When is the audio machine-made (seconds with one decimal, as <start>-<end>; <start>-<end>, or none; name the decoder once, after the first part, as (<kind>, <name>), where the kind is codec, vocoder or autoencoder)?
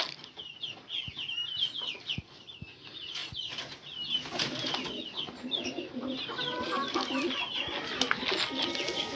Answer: none